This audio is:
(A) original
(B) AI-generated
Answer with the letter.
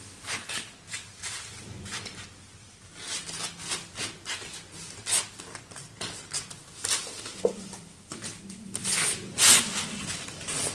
A